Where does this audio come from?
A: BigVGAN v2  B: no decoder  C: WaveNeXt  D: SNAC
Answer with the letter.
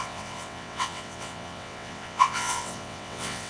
C